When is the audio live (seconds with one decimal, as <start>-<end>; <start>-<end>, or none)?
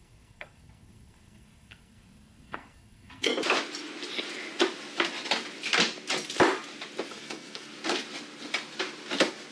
3.3-7.1; 7.7-9.5